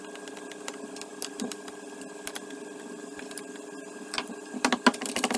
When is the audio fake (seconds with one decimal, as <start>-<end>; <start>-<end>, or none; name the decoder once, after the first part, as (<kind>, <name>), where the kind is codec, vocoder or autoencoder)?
none